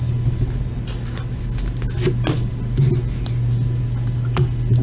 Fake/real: real